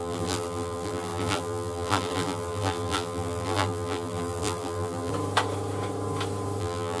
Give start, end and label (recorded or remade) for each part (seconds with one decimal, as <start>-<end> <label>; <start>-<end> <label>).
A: 0.0-5.1 remade; 5.1-6.6 recorded; 6.6-7.0 remade